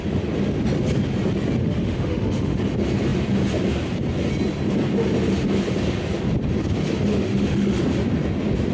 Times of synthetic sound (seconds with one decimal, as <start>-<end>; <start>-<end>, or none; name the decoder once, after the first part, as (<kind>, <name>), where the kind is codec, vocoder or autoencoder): 1.6-2.6 (autoencoder, DAC-VAE); 7.1-7.8